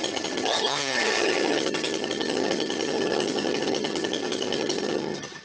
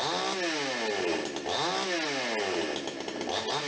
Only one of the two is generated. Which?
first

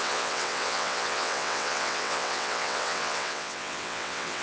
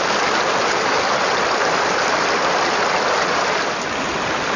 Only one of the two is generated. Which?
first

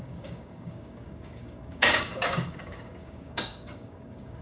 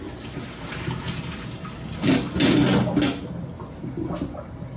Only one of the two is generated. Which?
first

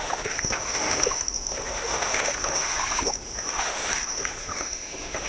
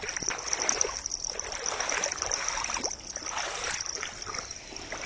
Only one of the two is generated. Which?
first